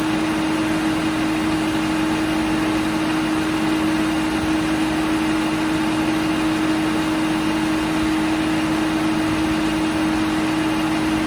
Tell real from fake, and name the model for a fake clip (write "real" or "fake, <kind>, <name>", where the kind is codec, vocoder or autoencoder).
real